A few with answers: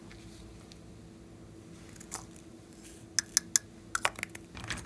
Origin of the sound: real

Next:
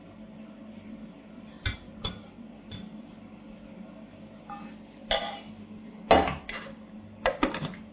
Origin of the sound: real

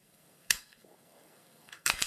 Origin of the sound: fake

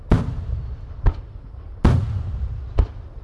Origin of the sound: real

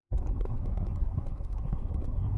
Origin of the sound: fake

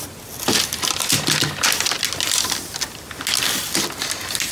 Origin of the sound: real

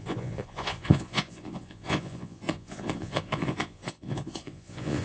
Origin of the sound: fake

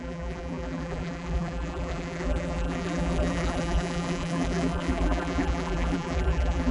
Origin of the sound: fake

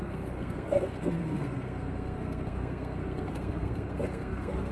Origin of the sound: fake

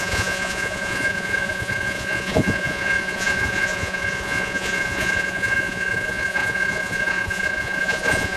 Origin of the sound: fake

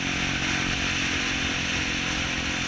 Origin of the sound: real